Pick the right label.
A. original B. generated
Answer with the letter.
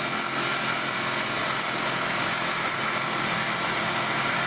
A